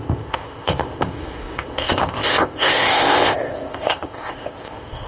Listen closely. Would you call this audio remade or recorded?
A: remade